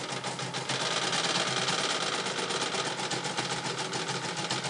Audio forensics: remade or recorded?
recorded